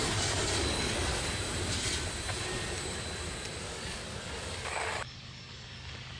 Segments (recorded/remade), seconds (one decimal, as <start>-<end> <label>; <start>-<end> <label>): 0.0-1.1 remade; 1.1-3.6 recorded; 3.6-6.2 remade